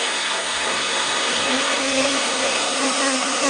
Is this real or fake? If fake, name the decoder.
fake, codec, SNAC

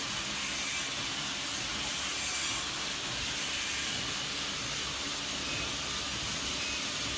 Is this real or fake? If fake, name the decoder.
real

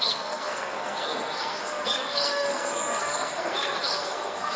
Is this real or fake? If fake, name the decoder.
fake, codec, SNAC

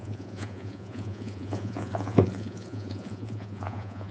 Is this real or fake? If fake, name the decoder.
fake, vocoder, Vocos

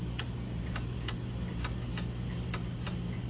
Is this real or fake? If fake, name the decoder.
real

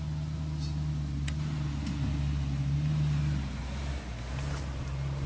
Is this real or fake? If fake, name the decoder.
real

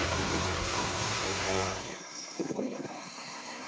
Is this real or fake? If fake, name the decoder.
fake, codec, SNAC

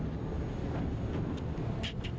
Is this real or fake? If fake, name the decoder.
real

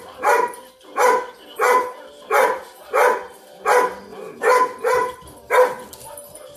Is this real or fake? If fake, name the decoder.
real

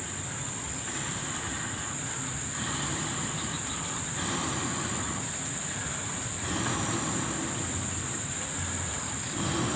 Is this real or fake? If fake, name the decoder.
real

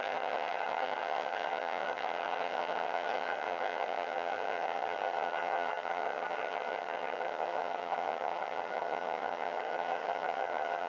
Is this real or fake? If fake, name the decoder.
fake, vocoder, HiFi-GAN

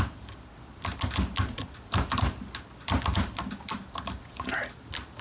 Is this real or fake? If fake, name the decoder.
real